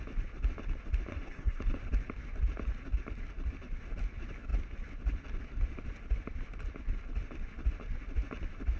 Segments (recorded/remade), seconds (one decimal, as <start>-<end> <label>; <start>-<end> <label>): 0.0-1.1 recorded; 1.1-1.6 remade; 1.6-8.8 recorded